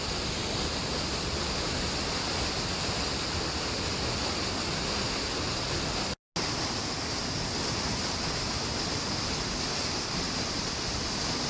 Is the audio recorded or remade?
recorded